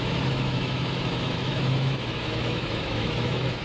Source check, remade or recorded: remade